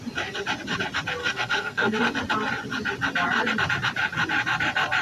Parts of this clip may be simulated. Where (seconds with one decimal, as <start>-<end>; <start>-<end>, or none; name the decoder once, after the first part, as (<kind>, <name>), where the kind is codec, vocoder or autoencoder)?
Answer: 1.2-2.0 (codec, SNAC)